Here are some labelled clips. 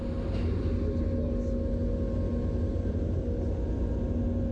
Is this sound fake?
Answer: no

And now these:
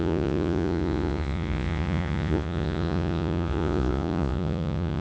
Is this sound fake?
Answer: yes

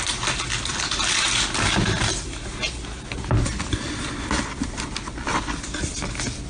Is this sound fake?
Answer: no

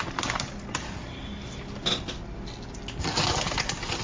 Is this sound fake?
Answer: no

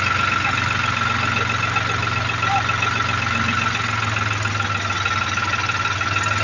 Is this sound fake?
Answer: no